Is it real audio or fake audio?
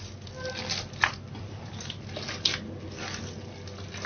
real